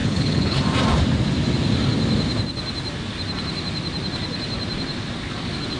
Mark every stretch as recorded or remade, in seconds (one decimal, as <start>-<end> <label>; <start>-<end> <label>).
0.0-0.6 remade; 0.6-5.8 recorded